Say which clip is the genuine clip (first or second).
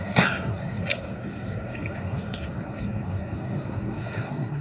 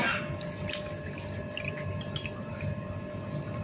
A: second